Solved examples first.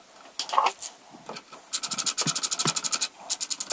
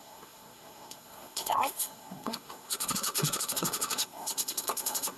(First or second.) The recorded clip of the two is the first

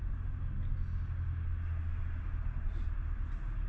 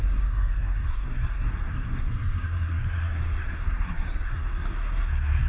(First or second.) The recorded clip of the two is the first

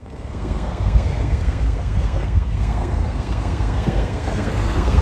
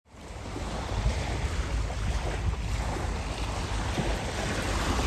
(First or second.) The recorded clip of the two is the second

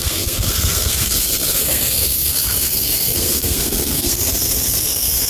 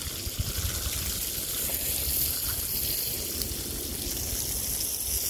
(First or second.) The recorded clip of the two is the second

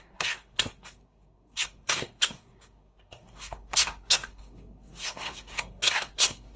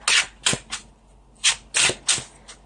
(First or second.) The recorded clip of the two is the second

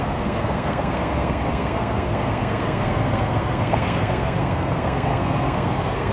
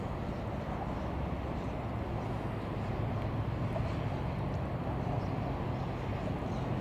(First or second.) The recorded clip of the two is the second